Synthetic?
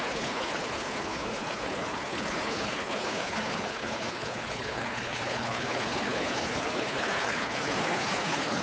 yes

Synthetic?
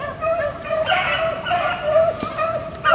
no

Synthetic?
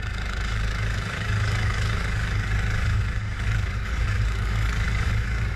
yes